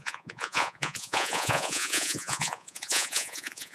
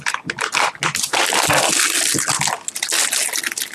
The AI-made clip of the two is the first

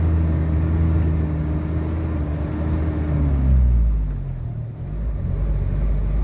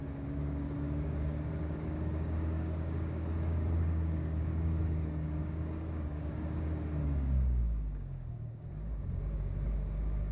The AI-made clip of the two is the second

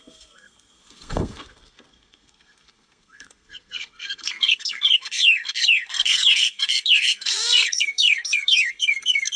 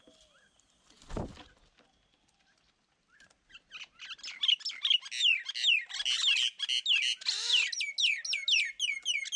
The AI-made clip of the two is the first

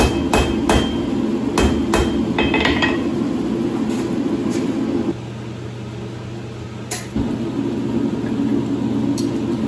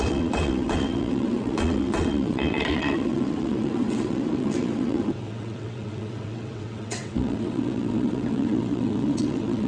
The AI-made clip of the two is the second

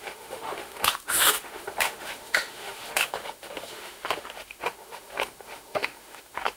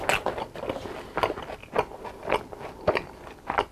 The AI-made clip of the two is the first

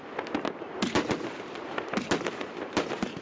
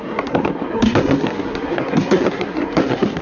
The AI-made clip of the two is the second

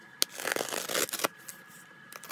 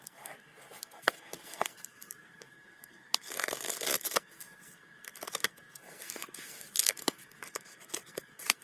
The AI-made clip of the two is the second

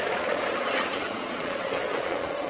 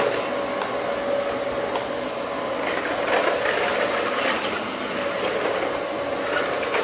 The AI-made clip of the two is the first